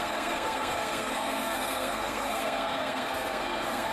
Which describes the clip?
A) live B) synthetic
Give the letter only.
B